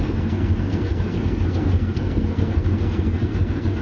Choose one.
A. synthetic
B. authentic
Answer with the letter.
A